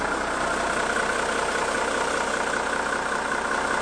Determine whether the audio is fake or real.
real